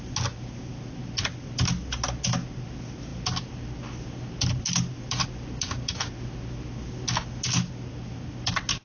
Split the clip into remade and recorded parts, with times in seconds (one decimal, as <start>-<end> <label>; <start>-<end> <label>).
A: 0.0-8.8 recorded